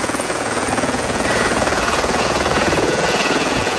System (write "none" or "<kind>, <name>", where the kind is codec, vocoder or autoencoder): vocoder, Vocos